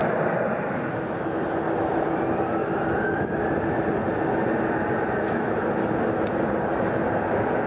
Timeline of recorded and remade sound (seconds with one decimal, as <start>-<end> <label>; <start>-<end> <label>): 0.0-7.7 recorded